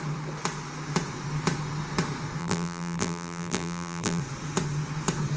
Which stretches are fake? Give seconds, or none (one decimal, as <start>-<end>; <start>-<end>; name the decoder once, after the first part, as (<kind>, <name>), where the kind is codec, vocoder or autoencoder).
2.4-4.2 (vocoder, BigVGAN v2)